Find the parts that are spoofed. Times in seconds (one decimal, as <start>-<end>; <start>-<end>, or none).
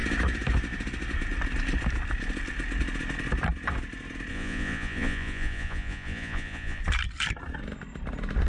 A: 4.3-6.8